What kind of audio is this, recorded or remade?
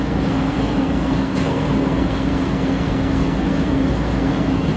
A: remade